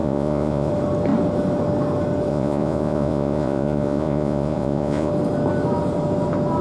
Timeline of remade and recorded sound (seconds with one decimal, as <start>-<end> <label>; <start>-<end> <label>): 0.0-0.7 remade; 0.7-2.3 recorded; 2.3-5.1 remade; 5.1-6.6 recorded

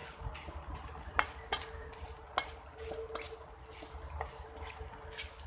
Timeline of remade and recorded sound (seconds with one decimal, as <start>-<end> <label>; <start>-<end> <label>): 0.0-5.5 recorded

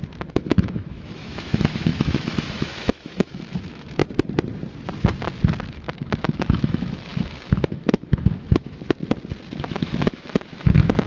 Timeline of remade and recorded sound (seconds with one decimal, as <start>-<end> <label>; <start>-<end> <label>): 0.0-4.0 remade; 4.0-5.7 recorded; 5.7-9.0 remade; 9.0-9.6 recorded; 9.6-11.1 remade